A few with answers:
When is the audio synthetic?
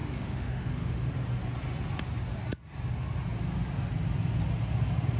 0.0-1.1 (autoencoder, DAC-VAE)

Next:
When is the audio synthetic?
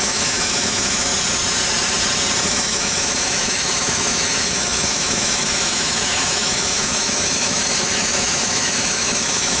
0.0-1.1 (autoencoder, DAC-VAE); 2.5-9.6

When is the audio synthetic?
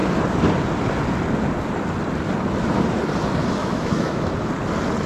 3.6-4.3 (autoencoder, DAC-VAE)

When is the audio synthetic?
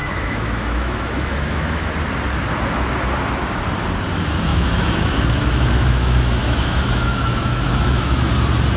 0.0-1.9 (autoencoder, DAC-VAE); 4.5-8.3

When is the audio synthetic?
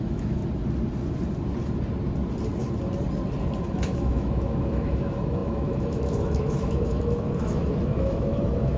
0.0-0.4 (autoencoder, DAC-VAE); 3.6-8.8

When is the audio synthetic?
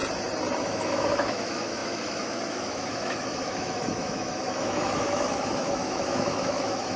0.6-7.0 (autoencoder, DAC-VAE)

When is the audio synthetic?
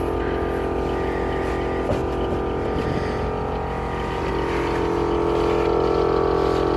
none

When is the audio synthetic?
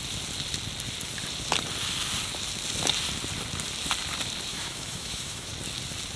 4.5-5.5 (autoencoder, DAC-VAE)